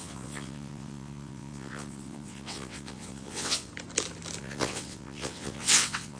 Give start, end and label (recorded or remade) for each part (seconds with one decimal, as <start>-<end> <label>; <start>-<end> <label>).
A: 0.0-3.7 remade; 3.7-4.4 recorded; 4.4-6.2 remade